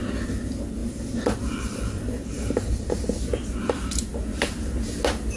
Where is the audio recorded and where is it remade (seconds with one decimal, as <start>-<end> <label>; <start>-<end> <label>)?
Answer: 0.0-0.8 recorded; 0.8-3.0 remade; 3.0-5.4 recorded